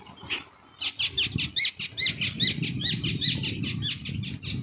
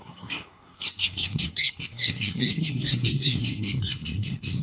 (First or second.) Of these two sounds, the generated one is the second